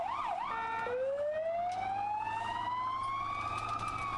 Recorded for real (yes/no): yes